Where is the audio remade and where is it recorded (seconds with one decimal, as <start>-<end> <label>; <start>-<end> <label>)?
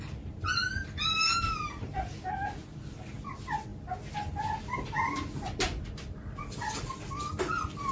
0.0-7.9 recorded